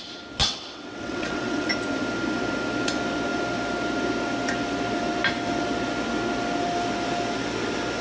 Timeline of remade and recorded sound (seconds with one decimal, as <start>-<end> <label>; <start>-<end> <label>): 0.0-0.4 recorded; 0.4-1.7 remade; 1.7-8.0 recorded